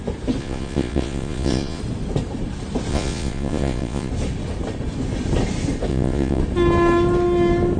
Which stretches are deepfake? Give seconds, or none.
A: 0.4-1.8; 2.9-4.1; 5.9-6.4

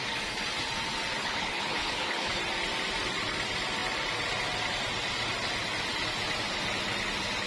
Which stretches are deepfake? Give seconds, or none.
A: 1.2-2.4

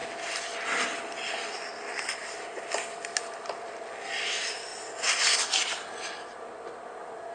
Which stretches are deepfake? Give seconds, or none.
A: none

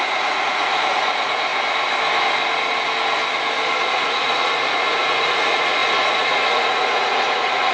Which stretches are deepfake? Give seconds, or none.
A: 0.0-1.5; 3.9-7.7

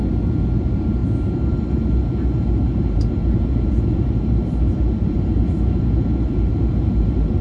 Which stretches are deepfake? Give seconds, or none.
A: 0.6-1.0; 1.5-7.4

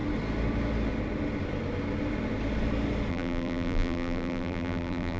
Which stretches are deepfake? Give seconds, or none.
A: 3.1-5.2

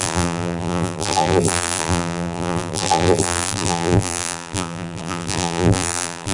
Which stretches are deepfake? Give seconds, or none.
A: 0.0-6.3